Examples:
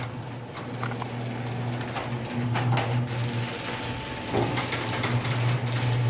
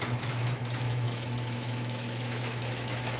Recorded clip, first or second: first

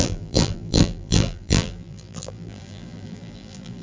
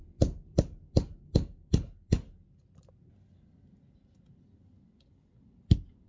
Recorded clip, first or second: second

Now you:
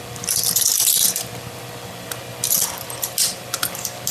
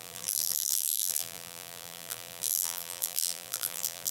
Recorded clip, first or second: first